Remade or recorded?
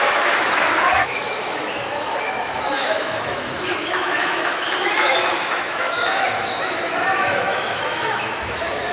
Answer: remade